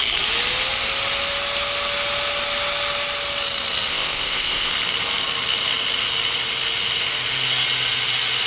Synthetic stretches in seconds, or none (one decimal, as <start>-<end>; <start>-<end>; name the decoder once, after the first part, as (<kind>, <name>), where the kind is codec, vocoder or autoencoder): 3.9-4.7 (codec, ZipCodec)